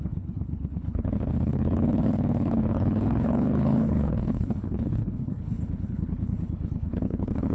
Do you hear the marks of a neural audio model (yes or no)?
yes